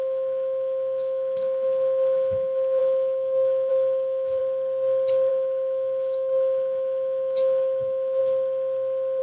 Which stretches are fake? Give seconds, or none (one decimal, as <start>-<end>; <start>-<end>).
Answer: 0.0-4.4; 5.3-8.2